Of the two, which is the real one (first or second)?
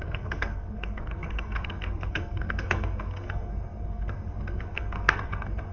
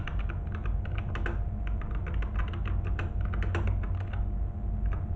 second